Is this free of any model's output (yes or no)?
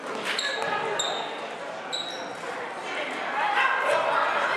yes